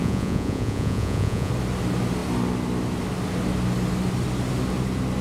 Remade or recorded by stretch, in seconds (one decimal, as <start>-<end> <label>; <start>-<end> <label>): 0.0-1.5 remade; 1.5-5.2 recorded